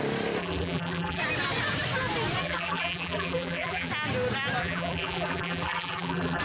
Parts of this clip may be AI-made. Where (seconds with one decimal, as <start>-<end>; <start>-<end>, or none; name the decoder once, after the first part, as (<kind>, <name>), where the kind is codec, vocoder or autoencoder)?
0.4-1.2 (vocoder, BigVGAN v2); 2.4-3.9; 4.6-6.4